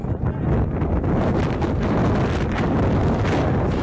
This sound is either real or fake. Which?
real